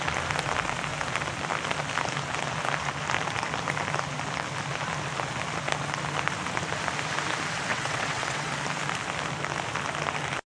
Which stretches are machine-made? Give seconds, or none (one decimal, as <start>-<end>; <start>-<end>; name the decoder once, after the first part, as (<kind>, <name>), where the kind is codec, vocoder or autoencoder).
7.7-8.5 (vocoder, WaveNeXt)